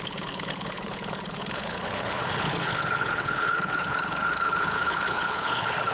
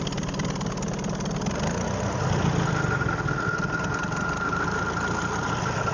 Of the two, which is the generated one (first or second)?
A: first